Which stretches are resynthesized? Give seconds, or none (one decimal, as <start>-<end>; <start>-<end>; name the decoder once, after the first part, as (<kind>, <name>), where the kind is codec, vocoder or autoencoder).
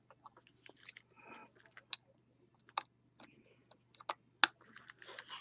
none